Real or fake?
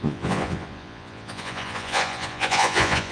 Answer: fake